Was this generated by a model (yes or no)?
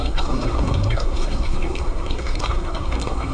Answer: yes